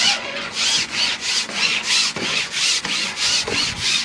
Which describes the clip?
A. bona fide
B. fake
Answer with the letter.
B